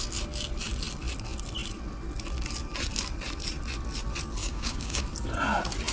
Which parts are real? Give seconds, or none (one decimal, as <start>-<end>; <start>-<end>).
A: 0.0-4.4; 5.0-5.9